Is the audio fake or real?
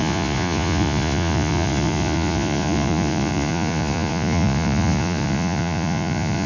fake